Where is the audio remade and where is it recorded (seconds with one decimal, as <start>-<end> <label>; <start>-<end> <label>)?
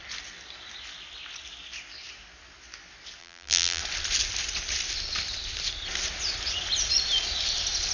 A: 0.0-3.2 recorded; 3.2-3.8 remade; 3.8-7.9 recorded